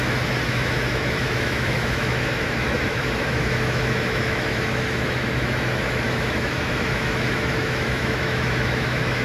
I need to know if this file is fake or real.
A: fake